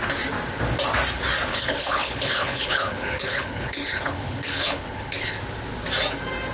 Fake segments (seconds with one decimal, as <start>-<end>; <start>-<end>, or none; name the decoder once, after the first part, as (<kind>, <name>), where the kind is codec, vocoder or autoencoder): 1.5-5.4 (codec, HILCodec)